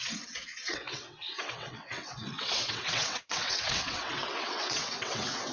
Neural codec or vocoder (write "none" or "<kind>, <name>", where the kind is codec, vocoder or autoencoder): vocoder, WaveNeXt